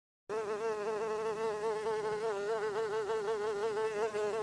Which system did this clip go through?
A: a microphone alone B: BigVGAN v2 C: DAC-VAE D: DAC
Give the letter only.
A